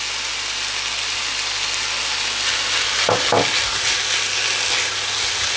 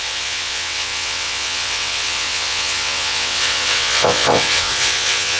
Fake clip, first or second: second